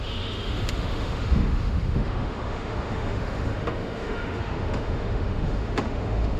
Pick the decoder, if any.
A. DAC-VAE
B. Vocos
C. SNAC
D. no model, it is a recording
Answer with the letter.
A